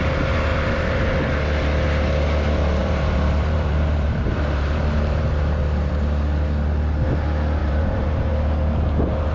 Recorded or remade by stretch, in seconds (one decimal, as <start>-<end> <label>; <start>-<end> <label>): 0.0-0.5 recorded; 0.5-1.0 remade; 1.0-2.8 recorded; 2.8-5.3 remade; 5.3-7.6 recorded; 7.6-8.3 remade; 8.3-9.3 recorded